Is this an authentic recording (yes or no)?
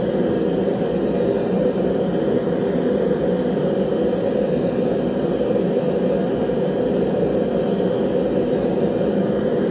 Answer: yes